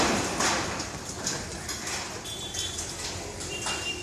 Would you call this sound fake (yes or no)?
no